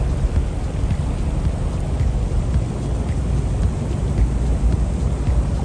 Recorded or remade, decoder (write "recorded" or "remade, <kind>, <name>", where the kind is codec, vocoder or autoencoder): recorded